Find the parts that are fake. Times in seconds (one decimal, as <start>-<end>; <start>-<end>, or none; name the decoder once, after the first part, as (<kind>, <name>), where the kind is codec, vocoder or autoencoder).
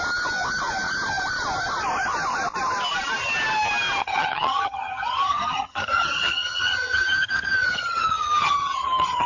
4.0-9.3 (vocoder, HiFi-GAN)